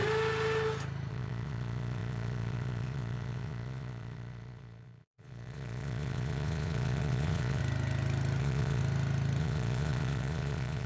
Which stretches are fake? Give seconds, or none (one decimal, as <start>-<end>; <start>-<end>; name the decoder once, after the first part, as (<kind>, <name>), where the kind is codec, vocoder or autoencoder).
1.1-7.6 (vocoder, Vocos); 8.4-8.8; 9.4-10.9